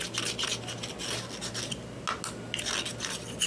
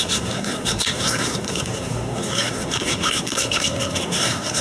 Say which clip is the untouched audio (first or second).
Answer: first